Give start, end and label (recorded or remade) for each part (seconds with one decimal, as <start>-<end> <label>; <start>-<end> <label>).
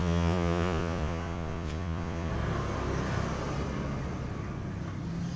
0.0-2.3 remade; 2.3-5.4 recorded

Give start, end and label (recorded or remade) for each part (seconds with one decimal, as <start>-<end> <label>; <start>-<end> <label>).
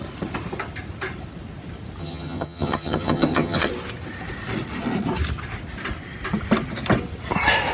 0.0-2.0 recorded; 2.0-3.7 remade; 3.7-7.7 recorded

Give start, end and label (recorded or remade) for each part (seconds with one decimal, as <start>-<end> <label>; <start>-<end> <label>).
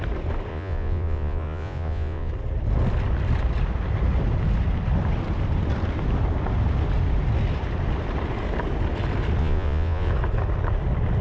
0.0-0.5 recorded; 0.5-2.3 remade; 2.3-9.4 recorded; 9.4-10.1 remade; 10.1-11.2 recorded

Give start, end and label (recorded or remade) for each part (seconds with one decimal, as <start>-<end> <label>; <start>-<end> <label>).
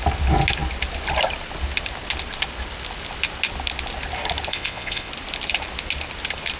0.0-4.5 recorded; 4.5-5.1 remade; 5.1-6.6 recorded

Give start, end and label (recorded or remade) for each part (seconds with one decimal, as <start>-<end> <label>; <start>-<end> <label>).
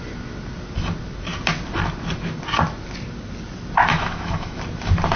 0.0-3.9 recorded; 3.9-4.6 remade; 4.6-5.2 recorded